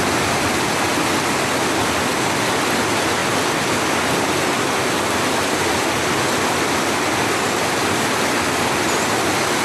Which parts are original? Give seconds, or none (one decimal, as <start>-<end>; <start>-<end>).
0.0-9.6